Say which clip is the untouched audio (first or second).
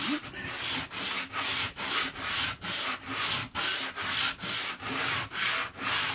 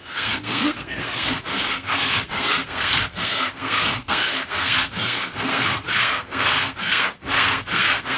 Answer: first